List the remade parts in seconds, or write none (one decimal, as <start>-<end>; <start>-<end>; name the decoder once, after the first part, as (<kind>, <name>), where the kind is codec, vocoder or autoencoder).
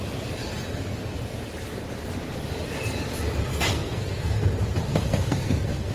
3.5-4.5 (codec, SNAC); 4.9-5.9